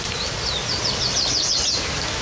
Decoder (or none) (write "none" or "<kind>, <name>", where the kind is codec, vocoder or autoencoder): none